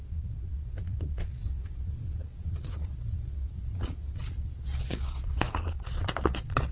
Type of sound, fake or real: fake